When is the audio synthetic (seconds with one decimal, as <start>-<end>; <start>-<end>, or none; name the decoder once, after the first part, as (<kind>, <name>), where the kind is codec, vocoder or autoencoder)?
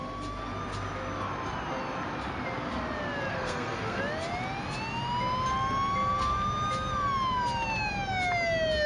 3.3-4.0 (codec, SNAC)